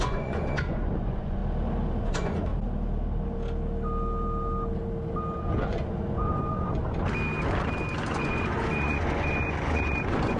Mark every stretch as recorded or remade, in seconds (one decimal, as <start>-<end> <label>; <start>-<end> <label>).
0.0-1.4 remade; 1.4-2.0 recorded; 2.0-2.5 remade; 2.5-5.4 recorded; 5.4-6.8 remade; 6.8-8.1 recorded; 8.1-10.4 remade